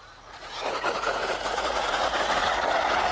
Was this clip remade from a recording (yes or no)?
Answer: yes